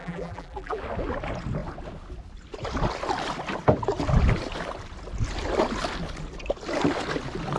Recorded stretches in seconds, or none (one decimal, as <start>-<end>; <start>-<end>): 0.8-7.6